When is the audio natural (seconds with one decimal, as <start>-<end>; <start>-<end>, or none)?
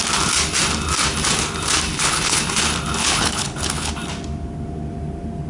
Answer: 0.0-1.9; 2.4-3.0; 3.9-5.5